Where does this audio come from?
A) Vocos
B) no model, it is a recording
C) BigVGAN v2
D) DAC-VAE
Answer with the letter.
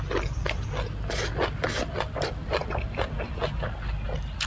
B